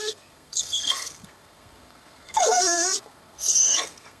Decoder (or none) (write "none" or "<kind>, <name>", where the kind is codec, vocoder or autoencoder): codec, SNAC